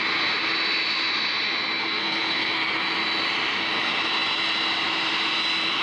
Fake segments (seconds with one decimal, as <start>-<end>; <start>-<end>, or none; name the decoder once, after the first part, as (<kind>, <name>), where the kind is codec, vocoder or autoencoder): 1.8-2.8 (codec, SNAC)